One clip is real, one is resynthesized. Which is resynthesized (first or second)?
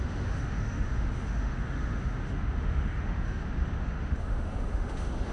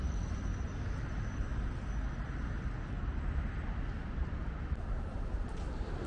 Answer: first